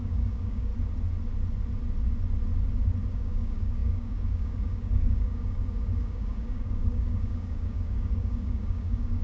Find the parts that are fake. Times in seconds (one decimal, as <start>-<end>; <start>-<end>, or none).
0.0-0.7; 3.1-9.2